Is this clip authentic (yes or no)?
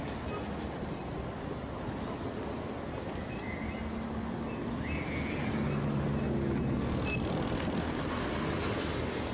yes